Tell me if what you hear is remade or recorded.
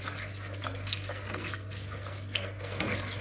remade